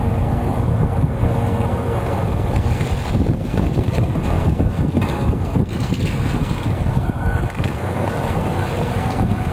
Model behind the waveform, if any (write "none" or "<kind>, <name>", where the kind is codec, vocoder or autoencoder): codec, SNAC